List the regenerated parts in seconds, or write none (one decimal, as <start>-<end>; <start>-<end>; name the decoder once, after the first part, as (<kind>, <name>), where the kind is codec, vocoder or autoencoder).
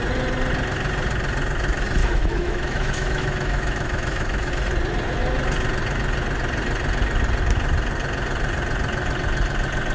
2.0-4.5 (autoencoder, DAC-VAE)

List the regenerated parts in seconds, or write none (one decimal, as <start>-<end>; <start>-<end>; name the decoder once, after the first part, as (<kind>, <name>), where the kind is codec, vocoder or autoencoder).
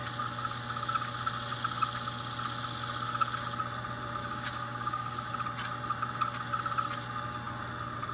4.2-5.3 (codec, DAC)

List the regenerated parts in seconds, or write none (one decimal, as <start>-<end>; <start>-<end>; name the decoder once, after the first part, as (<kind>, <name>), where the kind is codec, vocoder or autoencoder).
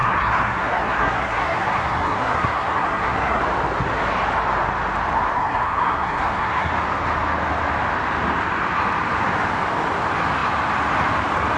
0.0-3.4 (codec, SNAC); 5.3-6.7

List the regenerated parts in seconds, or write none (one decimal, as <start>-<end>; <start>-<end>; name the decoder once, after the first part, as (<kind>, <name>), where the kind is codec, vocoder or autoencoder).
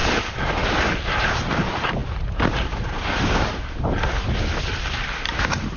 none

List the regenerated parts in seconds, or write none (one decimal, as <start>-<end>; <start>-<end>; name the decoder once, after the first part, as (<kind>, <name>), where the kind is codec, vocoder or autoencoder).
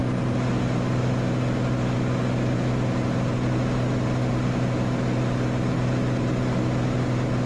none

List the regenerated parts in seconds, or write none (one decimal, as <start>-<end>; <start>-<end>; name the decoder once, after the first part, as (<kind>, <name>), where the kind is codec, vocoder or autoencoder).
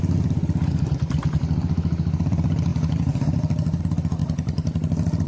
none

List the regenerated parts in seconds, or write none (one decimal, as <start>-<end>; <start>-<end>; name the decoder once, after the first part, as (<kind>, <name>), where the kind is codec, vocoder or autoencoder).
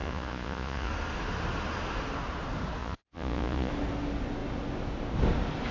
0.0-0.9 (vocoder, Vocos); 2.8-3.7